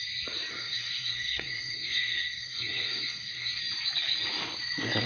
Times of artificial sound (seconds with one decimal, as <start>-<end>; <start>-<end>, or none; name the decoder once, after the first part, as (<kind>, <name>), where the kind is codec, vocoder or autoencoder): 0.5-3.6 (codec, SNAC)